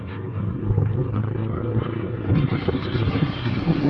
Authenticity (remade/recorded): remade